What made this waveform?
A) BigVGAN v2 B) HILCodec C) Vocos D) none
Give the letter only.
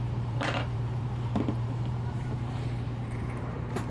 A